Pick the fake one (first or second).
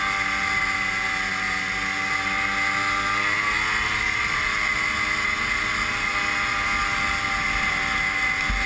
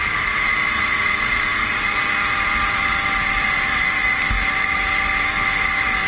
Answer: second